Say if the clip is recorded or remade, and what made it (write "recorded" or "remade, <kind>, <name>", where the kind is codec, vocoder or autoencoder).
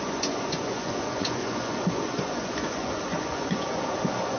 remade, vocoder, Vocos